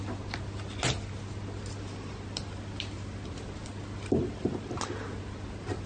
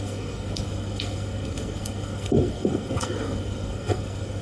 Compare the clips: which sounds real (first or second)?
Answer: first